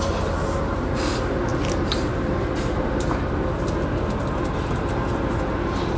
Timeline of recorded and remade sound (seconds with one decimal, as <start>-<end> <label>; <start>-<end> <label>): 0.0-1.5 recorded; 1.5-3.3 remade; 3.3-6.0 recorded